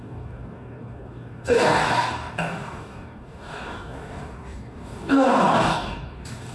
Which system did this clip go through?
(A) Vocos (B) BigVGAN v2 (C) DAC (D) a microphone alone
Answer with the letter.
C